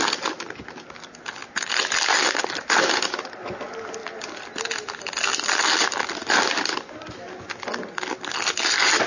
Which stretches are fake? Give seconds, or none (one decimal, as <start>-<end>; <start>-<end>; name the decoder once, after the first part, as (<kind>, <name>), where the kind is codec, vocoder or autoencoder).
none